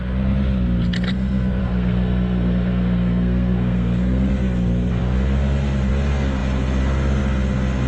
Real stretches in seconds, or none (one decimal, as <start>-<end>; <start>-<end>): 0.0-1.6; 4.3-7.9